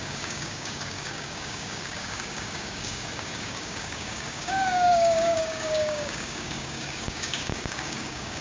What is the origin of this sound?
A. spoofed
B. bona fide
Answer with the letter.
A